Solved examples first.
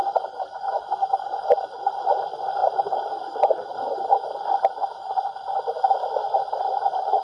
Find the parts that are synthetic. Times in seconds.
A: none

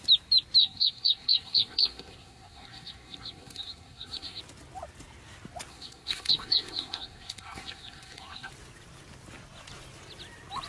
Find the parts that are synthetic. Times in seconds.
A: 0.6-4.4 (codec, SNAC); 5.7-8.5

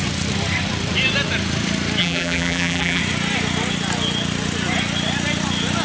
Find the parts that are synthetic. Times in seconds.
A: 2.0-3.0 (vocoder, BigVGAN v2)

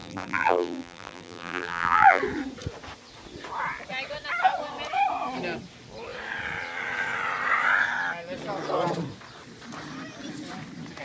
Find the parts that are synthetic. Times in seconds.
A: 0.0-2.2 (vocoder, BigVGAN v2)

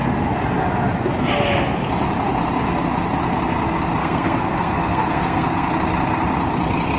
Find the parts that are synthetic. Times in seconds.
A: 4.0-5.7 (codec, SNAC)

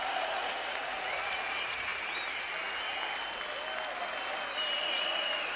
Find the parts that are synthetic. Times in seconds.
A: 0.0-1.9 (vocoder, Vocos); 4.8-5.6

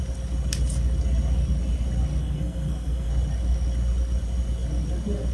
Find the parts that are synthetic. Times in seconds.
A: 2.2-3.1 (codec, SNAC)